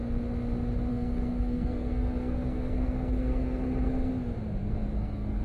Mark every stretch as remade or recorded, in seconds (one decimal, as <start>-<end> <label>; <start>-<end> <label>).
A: 0.0-0.9 recorded; 0.9-4.1 remade; 4.1-4.6 recorded; 4.6-5.4 remade